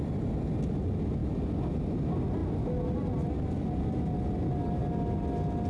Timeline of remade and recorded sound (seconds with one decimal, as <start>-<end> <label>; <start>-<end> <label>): 0.0-5.7 recorded